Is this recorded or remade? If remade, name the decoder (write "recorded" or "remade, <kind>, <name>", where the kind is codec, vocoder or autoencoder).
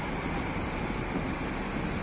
recorded